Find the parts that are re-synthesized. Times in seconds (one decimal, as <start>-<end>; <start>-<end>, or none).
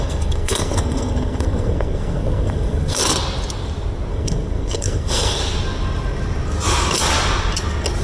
0.0-3.0; 4.1-5.4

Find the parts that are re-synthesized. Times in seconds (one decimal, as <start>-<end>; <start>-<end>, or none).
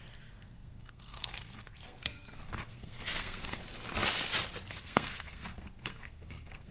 0.0-3.6; 4.7-6.7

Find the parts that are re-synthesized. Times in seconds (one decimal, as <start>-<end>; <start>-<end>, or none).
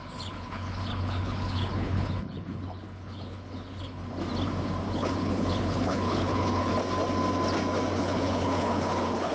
0.0-4.0; 4.9-6.7; 8.0-9.3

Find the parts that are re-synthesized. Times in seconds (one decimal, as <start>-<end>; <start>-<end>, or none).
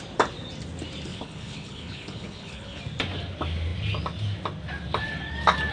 1.1-2.8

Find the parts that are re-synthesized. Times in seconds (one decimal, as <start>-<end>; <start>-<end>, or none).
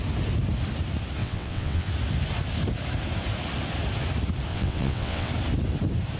1.2-1.9; 4.5-5.3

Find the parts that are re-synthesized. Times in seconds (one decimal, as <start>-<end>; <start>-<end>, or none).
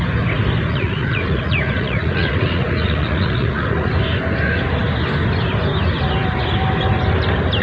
0.7-3.9